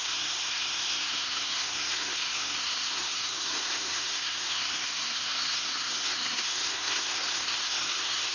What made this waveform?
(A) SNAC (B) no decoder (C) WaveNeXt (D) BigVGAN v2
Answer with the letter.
A